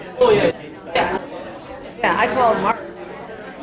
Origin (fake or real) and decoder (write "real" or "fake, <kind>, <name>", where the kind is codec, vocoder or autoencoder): real